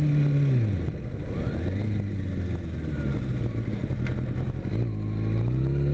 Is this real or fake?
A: real